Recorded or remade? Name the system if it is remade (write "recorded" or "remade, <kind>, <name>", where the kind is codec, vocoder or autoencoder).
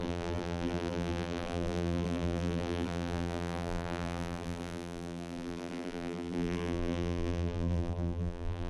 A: remade, vocoder, BigVGAN v2